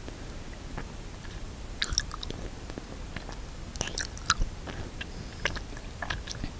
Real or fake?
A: real